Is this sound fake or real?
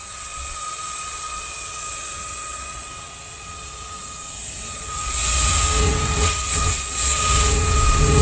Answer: fake